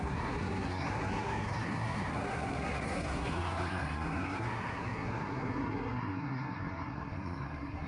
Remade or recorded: remade